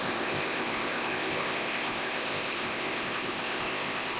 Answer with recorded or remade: remade